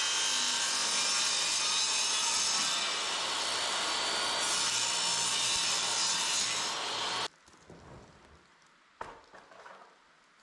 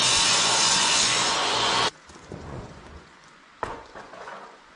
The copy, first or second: second